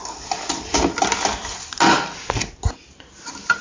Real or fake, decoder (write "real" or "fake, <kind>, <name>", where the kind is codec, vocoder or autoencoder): real